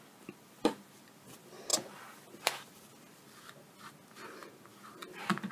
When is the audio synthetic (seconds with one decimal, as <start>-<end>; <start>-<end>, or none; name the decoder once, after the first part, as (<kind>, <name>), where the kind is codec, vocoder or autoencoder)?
none